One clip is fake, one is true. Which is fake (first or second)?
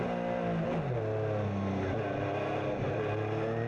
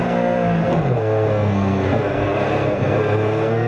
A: second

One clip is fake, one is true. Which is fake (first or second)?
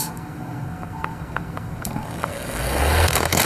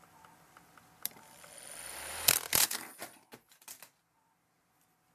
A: first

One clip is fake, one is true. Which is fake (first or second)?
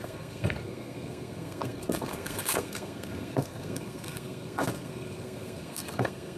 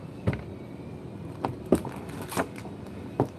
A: first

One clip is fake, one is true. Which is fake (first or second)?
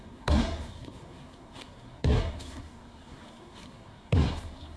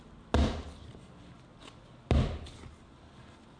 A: first